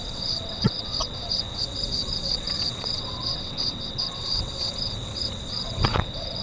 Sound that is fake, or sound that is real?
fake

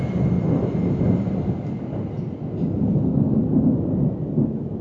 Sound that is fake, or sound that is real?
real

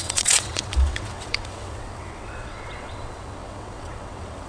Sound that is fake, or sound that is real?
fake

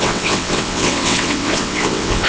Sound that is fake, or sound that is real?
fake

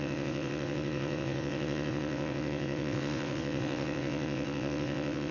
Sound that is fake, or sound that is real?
fake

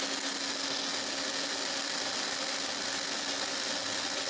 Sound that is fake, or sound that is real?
real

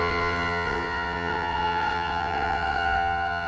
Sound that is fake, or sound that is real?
fake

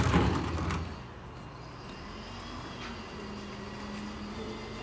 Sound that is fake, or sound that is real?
real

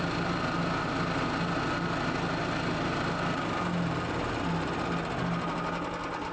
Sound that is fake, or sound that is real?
real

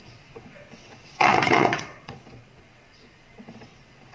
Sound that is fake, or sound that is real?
fake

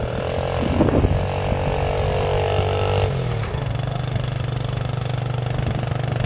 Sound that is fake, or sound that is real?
real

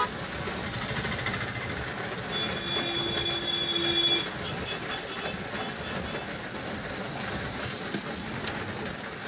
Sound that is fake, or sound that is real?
real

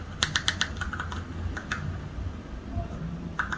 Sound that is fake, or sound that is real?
real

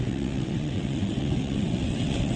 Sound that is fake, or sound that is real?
fake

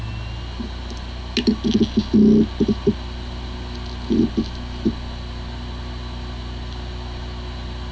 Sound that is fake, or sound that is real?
real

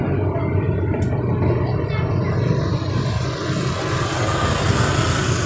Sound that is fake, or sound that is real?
real